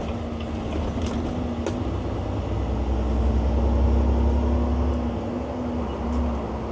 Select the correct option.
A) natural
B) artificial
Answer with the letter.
A